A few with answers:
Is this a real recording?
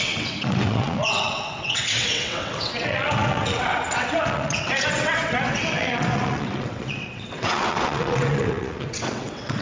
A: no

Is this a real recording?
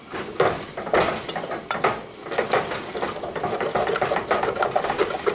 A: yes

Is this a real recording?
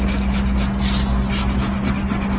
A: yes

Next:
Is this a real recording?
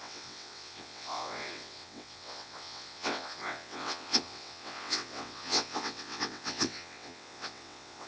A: no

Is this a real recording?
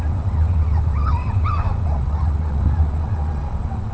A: no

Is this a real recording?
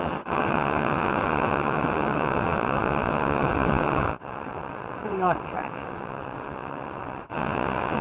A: no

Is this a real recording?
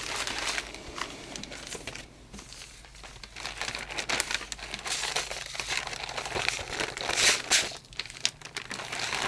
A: yes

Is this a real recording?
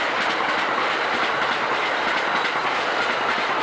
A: yes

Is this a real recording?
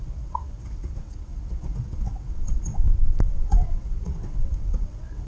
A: no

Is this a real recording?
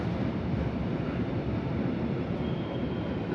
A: yes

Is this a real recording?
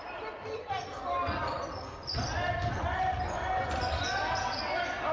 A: yes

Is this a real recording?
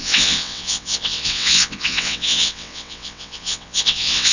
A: no